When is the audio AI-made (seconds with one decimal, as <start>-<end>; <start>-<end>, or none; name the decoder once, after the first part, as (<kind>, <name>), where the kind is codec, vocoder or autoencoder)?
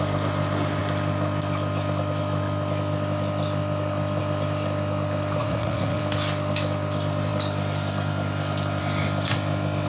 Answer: 5.4-6.0 (vocoder, Vocos)